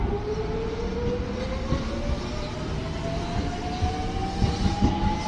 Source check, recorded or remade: recorded